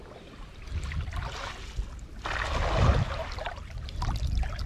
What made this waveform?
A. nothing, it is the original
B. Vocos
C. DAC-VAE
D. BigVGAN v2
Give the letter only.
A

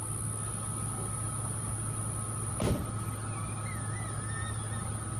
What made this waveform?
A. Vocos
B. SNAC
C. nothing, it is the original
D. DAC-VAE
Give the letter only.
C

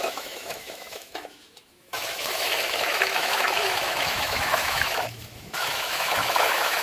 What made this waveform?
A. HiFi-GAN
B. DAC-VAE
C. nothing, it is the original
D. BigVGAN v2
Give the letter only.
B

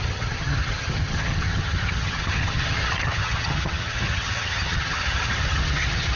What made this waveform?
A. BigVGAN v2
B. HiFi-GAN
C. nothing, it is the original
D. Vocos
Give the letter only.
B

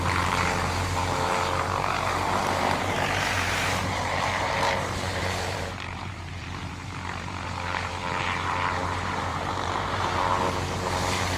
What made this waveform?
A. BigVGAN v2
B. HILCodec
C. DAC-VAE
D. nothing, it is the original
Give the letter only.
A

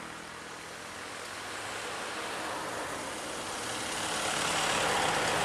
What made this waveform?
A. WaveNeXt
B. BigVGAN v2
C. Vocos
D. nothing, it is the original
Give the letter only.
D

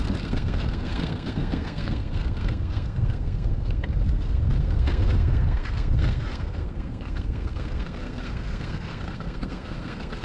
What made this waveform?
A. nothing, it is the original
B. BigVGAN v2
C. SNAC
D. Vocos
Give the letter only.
C